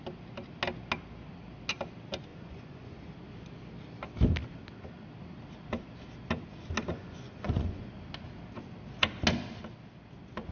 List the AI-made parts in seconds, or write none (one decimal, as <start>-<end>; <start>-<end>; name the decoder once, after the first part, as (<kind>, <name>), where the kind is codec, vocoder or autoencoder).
2.3-3.0 (vocoder, Vocos); 6.9-7.9